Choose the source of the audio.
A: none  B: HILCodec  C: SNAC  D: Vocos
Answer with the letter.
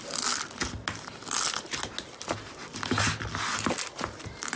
A